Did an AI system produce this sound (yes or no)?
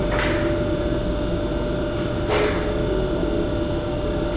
no